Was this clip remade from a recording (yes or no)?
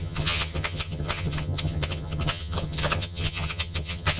yes